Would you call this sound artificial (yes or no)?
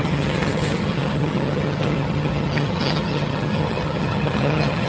yes